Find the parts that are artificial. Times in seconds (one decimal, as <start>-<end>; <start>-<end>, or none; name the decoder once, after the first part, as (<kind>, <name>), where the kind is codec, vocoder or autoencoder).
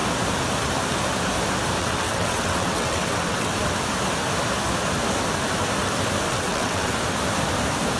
1.8-3.5 (vocoder, WaveNeXt); 6.3-6.9